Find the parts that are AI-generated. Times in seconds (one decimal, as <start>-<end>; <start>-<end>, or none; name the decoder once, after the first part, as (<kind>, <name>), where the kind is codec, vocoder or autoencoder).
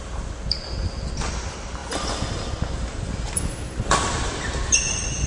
none